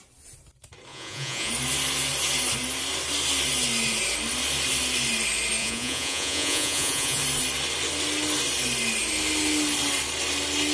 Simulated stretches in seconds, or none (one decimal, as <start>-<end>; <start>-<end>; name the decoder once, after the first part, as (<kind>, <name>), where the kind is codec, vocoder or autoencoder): 0.9-1.5 (vocoder, Vocos); 5.6-7.2